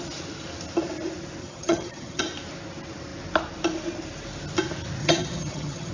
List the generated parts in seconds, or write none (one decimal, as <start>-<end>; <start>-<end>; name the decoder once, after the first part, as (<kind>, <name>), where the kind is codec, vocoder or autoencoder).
1.4-2.2 (vocoder, HiFi-GAN); 5.0-5.9